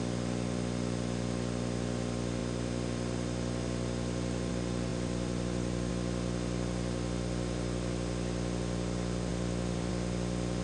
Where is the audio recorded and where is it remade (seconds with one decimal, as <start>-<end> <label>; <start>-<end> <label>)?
0.0-4.9 recorded; 4.9-5.9 remade; 5.9-9.3 recorded; 9.3-9.9 remade; 9.9-10.6 recorded